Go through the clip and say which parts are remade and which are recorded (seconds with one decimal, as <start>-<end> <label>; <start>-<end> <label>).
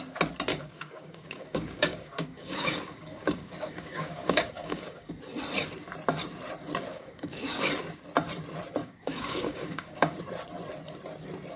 0.0-0.5 recorded; 0.5-5.1 remade; 5.1-6.9 recorded; 6.9-7.7 remade; 7.7-8.8 recorded; 8.8-10.2 remade; 10.2-11.6 recorded